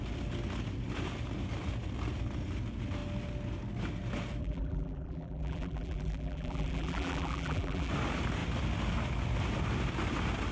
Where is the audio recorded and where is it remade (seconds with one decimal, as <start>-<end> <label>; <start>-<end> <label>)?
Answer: 0.0-4.4 recorded; 4.4-7.9 remade; 7.9-10.5 recorded